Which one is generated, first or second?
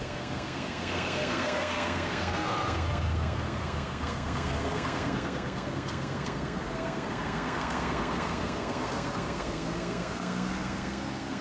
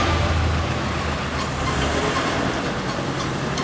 first